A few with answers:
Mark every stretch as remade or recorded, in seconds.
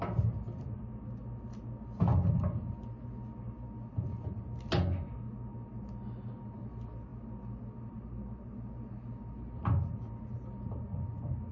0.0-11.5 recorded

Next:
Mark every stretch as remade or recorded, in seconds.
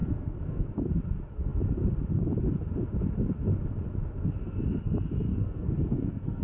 0.0-0.7 remade; 0.7-5.3 recorded; 5.3-6.4 remade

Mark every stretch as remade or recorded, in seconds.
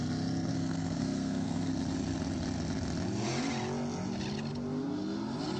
0.0-0.5 recorded; 0.5-1.7 remade; 1.7-5.6 recorded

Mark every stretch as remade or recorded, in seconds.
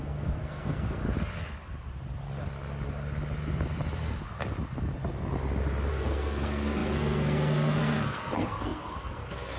0.0-1.0 remade; 1.0-5.9 recorded; 5.9-9.6 remade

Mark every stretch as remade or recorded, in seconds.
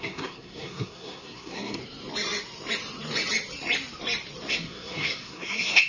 0.0-1.8 remade; 1.8-4.5 recorded; 4.5-5.9 remade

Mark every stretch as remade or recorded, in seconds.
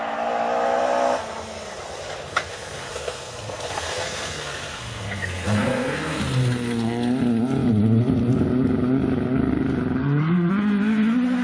0.0-2.3 recorded; 2.3-6.2 remade; 6.2-10.0 recorded; 10.0-10.5 remade; 10.5-11.4 recorded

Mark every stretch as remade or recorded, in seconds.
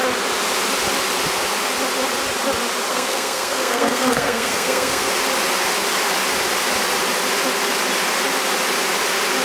0.0-2.9 recorded; 2.9-5.1 remade; 5.1-9.4 recorded